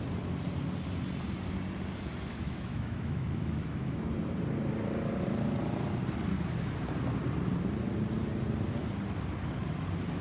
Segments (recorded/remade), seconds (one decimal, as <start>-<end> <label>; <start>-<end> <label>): 0.0-2.3 recorded; 2.3-4.0 remade; 4.0-10.2 recorded